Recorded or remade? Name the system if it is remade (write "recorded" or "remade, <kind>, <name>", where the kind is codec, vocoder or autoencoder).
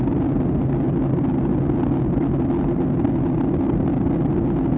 recorded